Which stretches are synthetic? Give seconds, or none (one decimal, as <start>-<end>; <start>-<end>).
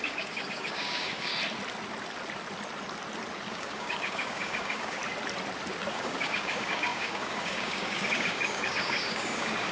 0.0-1.3; 3.5-5.0; 5.9-9.7